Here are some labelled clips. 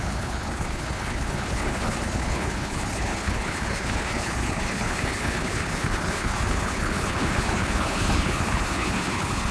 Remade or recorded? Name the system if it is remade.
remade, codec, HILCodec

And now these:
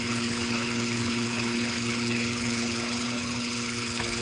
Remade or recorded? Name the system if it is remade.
remade, codec, HILCodec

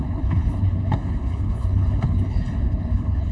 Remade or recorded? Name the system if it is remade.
remade, codec, HILCodec